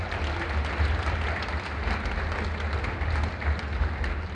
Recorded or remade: recorded